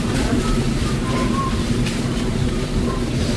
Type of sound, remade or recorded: recorded